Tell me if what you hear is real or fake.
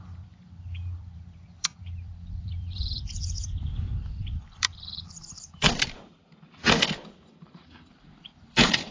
fake